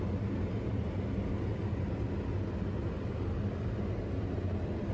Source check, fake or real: real